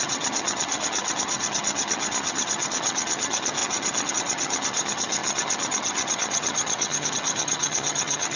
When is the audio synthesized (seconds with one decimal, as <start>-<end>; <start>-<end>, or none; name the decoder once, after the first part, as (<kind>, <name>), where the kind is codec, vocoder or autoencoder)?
0.0-8.4 (vocoder, HiFi-GAN)